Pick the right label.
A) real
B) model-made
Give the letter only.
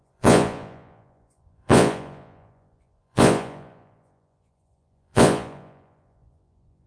B